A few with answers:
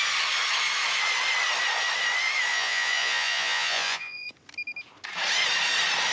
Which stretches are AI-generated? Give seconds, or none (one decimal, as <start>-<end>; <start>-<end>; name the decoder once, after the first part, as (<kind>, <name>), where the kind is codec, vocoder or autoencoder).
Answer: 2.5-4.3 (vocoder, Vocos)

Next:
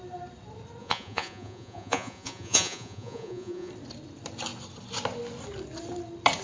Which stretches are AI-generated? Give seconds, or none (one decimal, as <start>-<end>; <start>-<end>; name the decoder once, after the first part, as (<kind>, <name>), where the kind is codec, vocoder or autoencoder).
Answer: 0.8-3.7 (vocoder, Vocos)

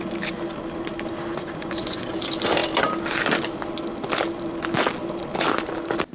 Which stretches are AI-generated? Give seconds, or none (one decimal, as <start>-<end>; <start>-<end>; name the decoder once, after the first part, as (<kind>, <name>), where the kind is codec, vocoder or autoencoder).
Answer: 1.3-2.1 (vocoder, Vocos)